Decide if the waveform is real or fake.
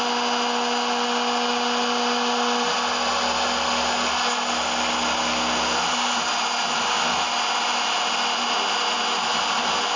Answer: real